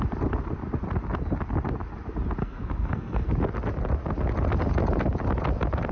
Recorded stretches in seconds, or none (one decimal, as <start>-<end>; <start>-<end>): 0.0-2.4; 3.3-5.9